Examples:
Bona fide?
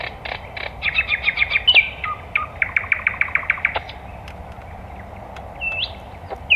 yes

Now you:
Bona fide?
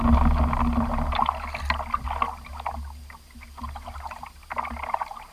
yes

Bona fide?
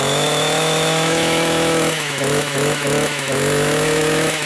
no